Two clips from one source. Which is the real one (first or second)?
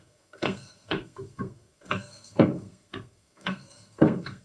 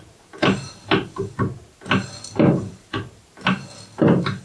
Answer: second